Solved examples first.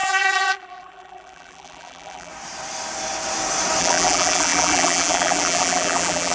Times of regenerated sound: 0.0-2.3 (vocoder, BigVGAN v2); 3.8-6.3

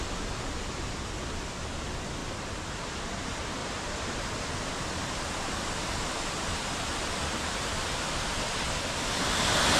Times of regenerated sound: 3.6-4.3 (vocoder, BigVGAN v2)